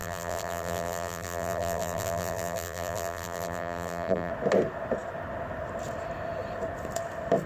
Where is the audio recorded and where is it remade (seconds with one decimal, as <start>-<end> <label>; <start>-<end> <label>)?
0.0-4.3 remade; 4.3-7.5 recorded